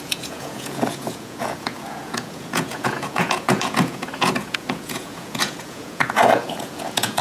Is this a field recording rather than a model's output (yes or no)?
no